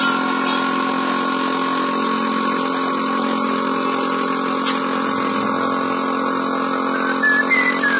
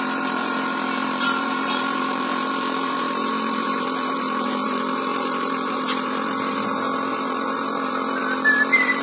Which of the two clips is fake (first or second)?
second